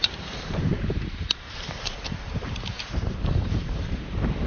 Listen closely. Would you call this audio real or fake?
fake